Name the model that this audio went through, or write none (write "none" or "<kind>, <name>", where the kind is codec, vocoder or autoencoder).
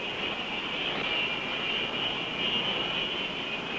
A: vocoder, BigVGAN v2